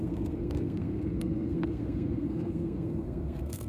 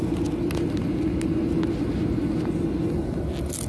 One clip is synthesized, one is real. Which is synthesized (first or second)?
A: first